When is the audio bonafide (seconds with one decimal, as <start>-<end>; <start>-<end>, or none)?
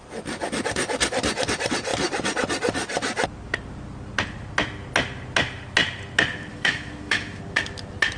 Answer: 0.0-6.5; 7.4-8.2